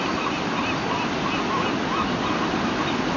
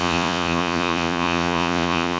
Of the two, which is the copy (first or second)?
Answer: second